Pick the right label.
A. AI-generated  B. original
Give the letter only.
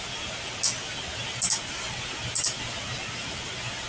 B